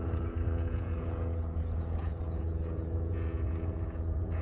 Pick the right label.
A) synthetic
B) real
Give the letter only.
A